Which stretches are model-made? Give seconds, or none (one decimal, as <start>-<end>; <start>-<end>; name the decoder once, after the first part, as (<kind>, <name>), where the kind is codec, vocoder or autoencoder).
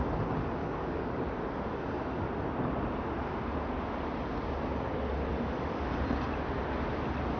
0.6-1.2 (codec, DAC); 5.3-5.9